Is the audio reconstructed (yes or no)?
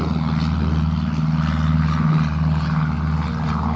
no